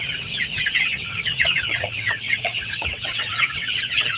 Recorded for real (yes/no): no